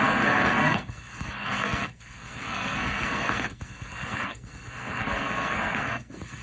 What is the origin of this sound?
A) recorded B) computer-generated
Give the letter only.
B